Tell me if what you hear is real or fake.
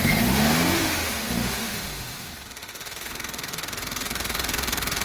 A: fake